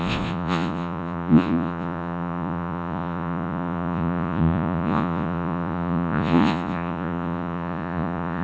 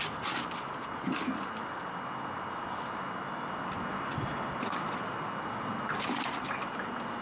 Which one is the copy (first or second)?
first